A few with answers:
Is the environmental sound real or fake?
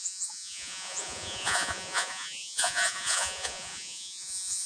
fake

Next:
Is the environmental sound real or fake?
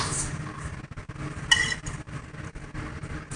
real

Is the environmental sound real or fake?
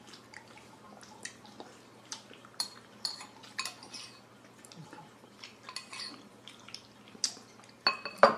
real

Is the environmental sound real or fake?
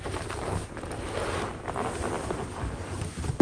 real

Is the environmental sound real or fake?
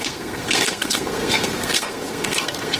fake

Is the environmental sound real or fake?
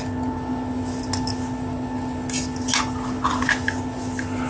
real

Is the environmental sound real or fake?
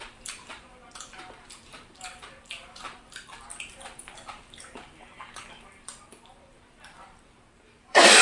fake